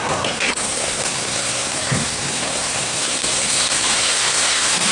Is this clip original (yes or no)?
no